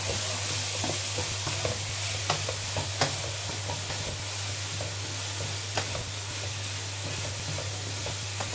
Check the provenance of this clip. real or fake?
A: real